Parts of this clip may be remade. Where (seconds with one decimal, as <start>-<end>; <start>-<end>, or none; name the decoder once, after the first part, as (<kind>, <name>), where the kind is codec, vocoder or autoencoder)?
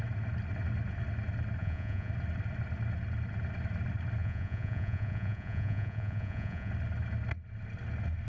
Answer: 1.6-2.1 (vocoder, Vocos); 4.2-6.7